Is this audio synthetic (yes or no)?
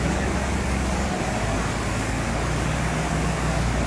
yes